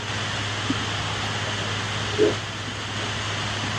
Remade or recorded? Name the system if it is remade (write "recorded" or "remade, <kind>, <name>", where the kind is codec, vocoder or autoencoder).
recorded